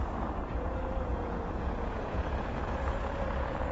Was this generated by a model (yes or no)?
yes